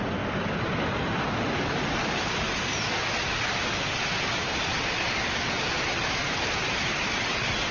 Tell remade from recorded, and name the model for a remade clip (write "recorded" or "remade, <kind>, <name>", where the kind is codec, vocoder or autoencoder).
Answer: recorded